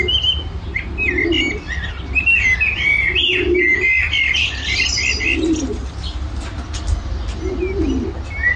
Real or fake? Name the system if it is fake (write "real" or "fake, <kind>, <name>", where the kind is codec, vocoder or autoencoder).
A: real